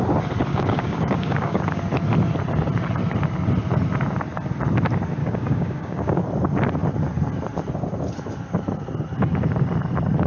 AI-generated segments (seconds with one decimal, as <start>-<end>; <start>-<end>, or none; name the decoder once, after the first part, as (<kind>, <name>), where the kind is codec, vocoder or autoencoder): 0.5-1.8 (codec, DAC); 5.2-6.2